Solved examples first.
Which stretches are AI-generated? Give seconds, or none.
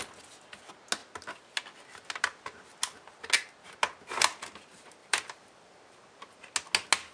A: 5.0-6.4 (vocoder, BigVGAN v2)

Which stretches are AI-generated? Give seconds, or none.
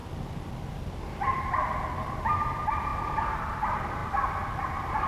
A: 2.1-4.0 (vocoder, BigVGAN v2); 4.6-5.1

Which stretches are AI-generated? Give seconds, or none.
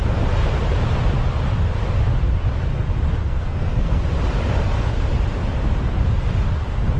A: 3.2-4.0 (codec, SNAC)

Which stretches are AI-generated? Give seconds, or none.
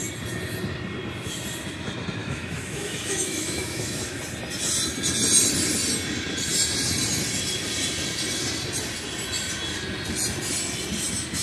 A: 2.2-4.2 (autoencoder, DAC-VAE)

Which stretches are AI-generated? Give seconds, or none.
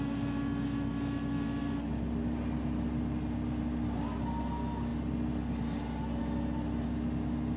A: none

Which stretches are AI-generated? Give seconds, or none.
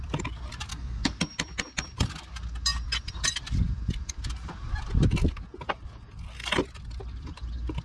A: 0.7-1.2 (codec, DAC)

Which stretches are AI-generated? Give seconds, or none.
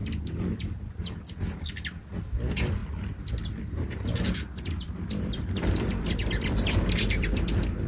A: 2.0-7.9 (vocoder, BigVGAN v2)